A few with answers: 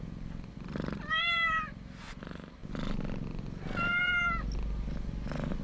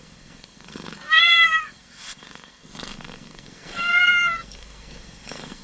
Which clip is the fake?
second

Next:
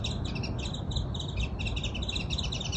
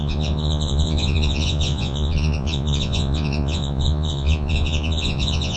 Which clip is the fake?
second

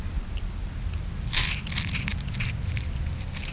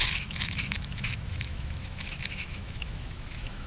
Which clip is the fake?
second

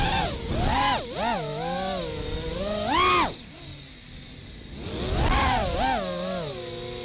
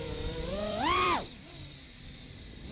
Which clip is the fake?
second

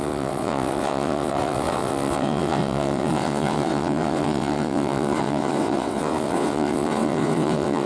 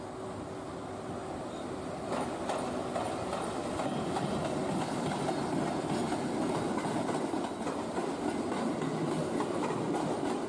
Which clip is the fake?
first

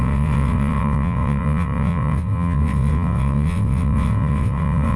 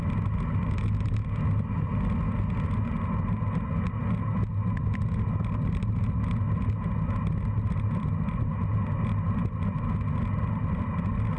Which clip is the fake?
first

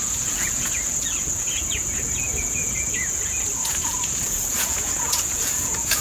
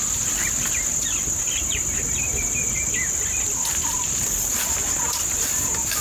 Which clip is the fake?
first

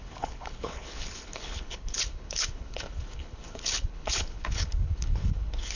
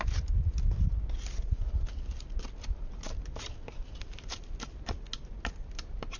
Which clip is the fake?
first